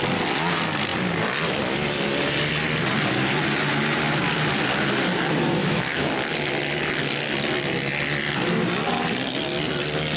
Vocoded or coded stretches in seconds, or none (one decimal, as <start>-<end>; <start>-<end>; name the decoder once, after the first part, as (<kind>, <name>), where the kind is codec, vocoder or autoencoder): 5.6-6.1 (autoencoder, DAC-VAE)